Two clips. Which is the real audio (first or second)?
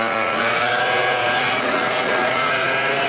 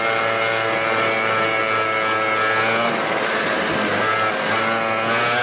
second